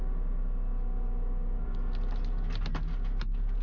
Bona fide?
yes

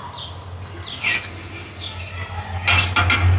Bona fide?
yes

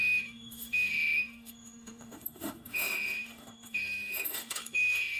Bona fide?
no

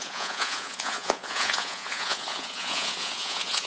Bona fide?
no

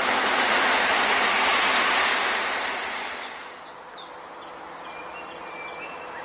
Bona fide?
yes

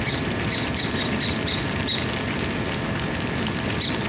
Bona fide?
yes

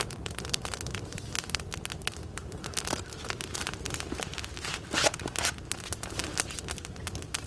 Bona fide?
yes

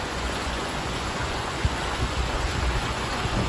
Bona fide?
no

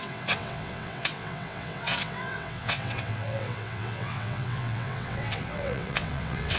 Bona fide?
no